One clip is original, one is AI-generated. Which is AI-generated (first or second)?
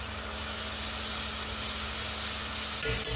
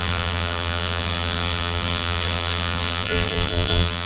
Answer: second